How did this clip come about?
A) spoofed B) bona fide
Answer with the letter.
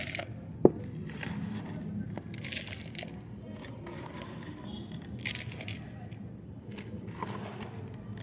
B